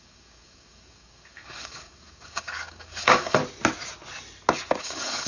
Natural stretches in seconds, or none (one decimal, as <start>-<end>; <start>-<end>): 3.4-4.8